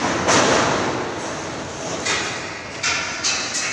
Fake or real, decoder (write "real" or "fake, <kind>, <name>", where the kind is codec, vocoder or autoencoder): real